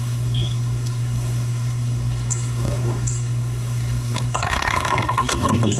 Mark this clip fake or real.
fake